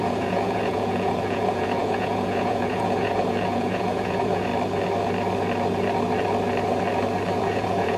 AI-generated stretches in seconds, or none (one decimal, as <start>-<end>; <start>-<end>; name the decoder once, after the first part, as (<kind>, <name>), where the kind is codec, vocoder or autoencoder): 0.0-4.5 (vocoder, Vocos); 7.4-8.0